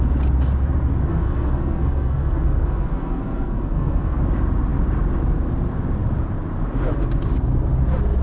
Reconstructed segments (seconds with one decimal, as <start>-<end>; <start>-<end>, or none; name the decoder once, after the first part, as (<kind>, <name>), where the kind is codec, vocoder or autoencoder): 1.1-4.2 (codec, SNAC)

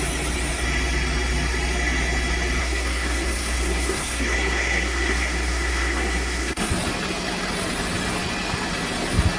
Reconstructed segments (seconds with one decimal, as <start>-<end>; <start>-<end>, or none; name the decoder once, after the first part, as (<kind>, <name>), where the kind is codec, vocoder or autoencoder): 2.6-6.7 (codec, SNAC)

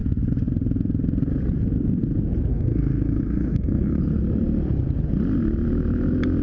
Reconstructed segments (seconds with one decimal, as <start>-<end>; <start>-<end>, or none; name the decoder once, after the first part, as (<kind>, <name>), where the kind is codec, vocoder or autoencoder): 2.5-4.0 (codec, SNAC)